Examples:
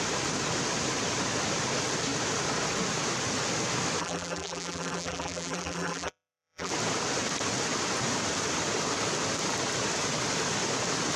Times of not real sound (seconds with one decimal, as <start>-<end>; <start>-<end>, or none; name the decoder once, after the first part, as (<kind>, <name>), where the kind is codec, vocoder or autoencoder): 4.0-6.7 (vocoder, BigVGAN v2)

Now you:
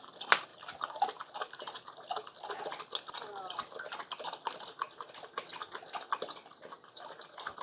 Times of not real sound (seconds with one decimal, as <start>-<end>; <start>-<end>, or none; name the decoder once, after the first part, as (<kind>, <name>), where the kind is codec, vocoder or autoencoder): none

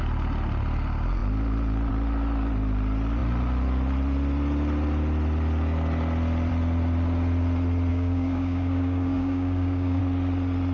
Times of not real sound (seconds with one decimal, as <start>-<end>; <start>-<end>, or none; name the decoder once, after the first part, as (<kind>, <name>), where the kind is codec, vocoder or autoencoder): 7.9-10.0 (codec, DAC)

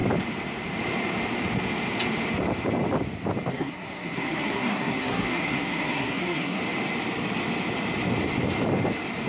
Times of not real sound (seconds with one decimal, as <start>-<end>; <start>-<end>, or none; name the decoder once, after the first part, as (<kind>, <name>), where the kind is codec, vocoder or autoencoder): 3.5-6.6 (codec, SNAC)

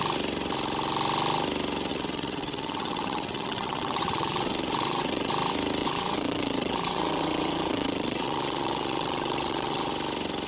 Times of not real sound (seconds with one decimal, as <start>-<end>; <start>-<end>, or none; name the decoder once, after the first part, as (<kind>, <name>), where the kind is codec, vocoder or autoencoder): 1.9-5.3 (vocoder, WaveNeXt); 5.8-9.9

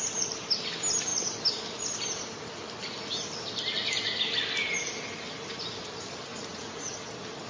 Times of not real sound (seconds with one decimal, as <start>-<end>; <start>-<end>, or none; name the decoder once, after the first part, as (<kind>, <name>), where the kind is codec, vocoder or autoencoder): 6.3-6.9 (vocoder, Vocos)